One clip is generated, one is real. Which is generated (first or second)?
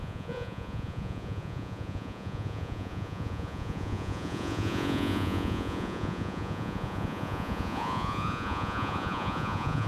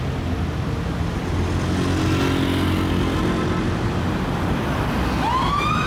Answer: first